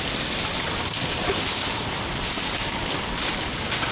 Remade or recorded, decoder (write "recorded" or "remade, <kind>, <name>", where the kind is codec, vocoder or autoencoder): recorded